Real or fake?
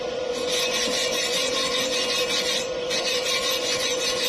fake